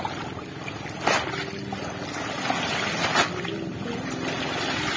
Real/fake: real